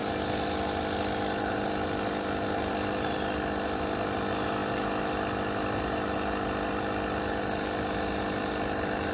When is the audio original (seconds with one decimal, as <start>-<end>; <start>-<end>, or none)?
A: 0.0-9.1